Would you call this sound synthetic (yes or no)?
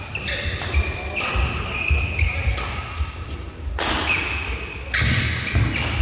no